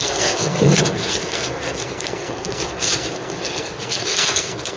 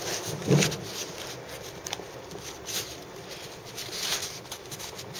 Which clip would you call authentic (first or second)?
second